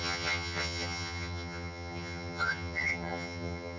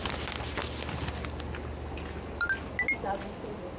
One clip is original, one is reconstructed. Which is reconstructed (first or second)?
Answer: first